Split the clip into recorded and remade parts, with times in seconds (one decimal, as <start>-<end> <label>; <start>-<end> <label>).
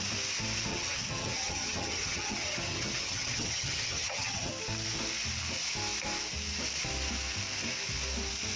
0.0-0.7 recorded; 0.7-4.5 remade; 4.5-8.6 recorded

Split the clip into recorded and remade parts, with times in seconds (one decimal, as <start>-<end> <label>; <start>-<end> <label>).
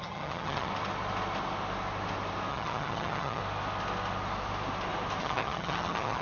0.0-0.7 remade; 0.7-2.5 recorded; 2.5-3.4 remade; 3.4-5.2 recorded; 5.2-6.2 remade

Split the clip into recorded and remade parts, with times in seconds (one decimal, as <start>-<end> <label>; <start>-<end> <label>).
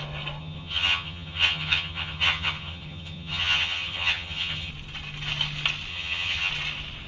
0.0-0.4 recorded; 0.4-4.7 remade; 4.7-5.9 recorded; 5.9-6.5 remade; 6.5-7.1 recorded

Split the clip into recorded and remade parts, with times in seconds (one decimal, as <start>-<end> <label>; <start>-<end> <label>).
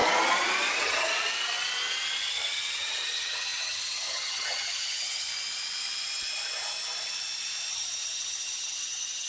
0.0-0.7 recorded; 0.7-1.1 remade; 1.1-2.2 recorded; 2.2-5.3 remade; 5.3-7.7 recorded; 7.7-9.3 remade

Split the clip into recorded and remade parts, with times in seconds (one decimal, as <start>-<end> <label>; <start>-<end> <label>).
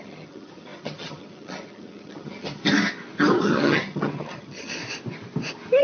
0.0-2.6 remade; 2.6-3.4 recorded; 3.4-4.8 remade; 4.8-5.8 recorded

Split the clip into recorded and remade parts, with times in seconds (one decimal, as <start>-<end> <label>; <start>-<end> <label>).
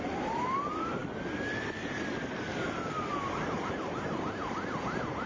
0.0-5.3 recorded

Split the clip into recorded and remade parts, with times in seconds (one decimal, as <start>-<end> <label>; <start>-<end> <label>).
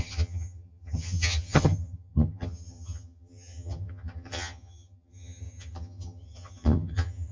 0.0-7.3 remade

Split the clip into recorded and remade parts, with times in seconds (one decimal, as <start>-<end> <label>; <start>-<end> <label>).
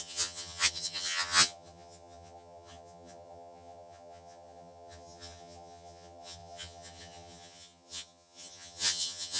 0.0-9.4 remade